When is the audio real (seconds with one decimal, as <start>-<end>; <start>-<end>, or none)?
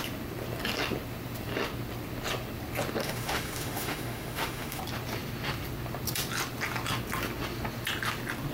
0.0-3.0; 4.8-8.5